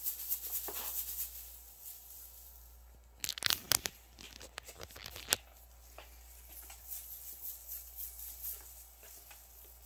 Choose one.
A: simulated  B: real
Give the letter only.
B